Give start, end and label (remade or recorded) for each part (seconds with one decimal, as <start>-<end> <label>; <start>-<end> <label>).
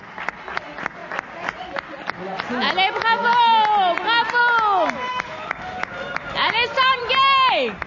0.0-7.9 recorded